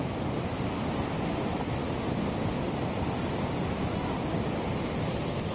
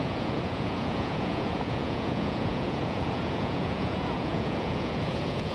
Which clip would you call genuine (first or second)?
first